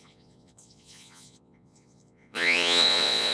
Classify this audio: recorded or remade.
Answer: remade